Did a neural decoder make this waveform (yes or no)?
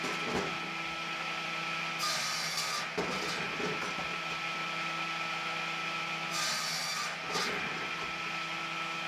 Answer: no